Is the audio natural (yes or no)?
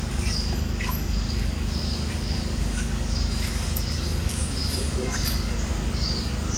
no